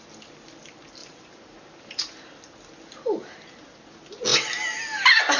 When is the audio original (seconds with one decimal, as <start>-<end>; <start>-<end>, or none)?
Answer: 0.0-1.0; 2.4-3.1; 3.8-5.4